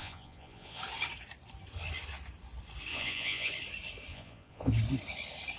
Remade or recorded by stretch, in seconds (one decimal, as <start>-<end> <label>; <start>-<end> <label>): 0.0-0.8 remade; 0.8-2.9 recorded; 2.9-3.5 remade; 3.5-4.1 recorded; 4.1-4.7 remade; 4.7-5.6 recorded